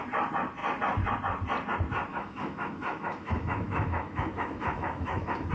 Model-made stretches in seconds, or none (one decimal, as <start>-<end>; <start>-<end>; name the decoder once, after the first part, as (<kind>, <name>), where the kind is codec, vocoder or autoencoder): 2.1-5.5 (autoencoder, DAC-VAE)